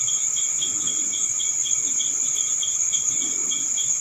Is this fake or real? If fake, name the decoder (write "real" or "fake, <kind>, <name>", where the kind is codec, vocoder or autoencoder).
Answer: fake, vocoder, BigVGAN v2